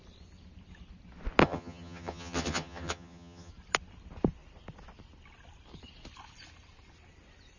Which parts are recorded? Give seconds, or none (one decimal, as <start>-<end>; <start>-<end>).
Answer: 0.0-1.4; 3.5-7.6